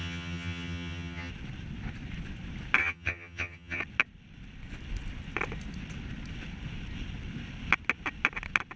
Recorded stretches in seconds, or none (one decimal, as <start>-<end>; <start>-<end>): 1.3-2.8; 3.8-8.8